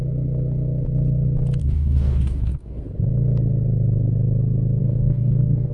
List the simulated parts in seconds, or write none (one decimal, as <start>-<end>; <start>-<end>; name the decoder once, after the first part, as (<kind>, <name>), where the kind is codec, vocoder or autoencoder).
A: 1.6-2.8 (codec, DAC); 4.8-5.7